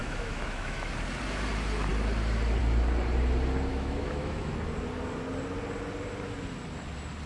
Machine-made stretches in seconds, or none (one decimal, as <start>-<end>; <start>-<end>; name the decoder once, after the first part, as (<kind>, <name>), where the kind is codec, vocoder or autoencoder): 0.0-0.9 (autoencoder, DAC-VAE); 3.7-4.5